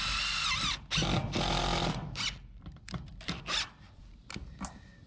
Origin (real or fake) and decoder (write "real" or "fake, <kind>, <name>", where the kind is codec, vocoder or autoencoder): real